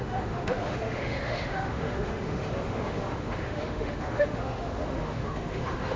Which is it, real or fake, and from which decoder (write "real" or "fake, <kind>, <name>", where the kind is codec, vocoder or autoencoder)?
fake, autoencoder, DAC-VAE